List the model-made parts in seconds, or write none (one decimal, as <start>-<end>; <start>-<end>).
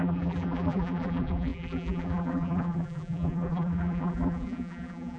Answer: 0.0-5.2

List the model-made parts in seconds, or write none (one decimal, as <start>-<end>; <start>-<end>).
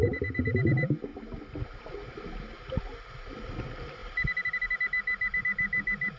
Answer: none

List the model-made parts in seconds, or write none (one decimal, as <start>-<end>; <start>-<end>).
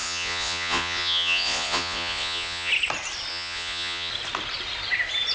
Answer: 0.0-2.7; 3.3-4.1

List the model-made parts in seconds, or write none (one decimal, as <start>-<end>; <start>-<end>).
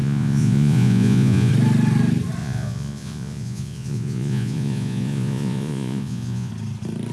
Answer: 0.0-1.5; 2.4-6.5